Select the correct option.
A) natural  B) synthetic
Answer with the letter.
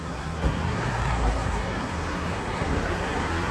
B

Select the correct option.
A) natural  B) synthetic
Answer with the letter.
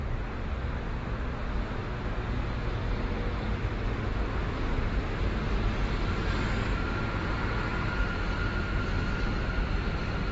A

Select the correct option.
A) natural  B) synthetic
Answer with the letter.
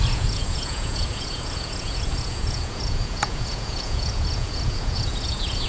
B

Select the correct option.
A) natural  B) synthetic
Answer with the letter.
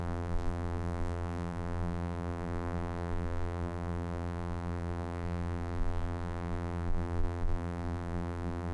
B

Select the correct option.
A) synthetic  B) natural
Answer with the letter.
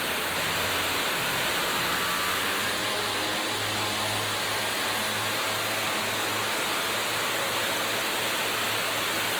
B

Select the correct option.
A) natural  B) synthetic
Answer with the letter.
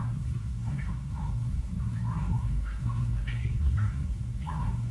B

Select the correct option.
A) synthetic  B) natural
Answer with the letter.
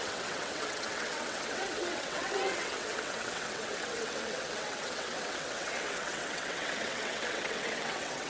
A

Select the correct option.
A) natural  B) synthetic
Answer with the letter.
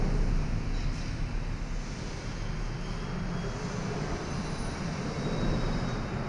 A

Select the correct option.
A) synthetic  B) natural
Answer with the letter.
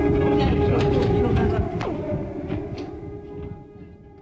B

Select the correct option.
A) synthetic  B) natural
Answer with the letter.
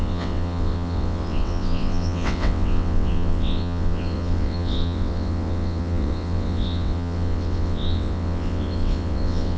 A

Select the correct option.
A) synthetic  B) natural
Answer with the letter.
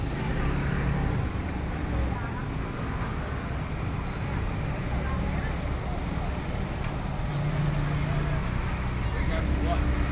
B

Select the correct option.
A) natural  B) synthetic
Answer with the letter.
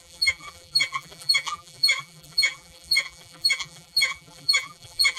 B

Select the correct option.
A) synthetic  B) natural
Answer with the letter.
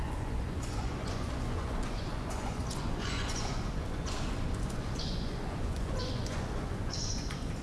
A